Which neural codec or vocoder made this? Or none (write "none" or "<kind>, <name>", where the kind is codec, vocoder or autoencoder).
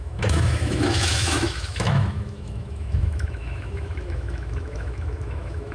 autoencoder, DAC-VAE